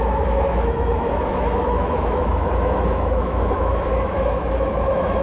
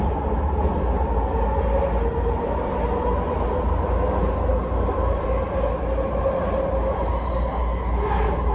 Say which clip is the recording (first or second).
second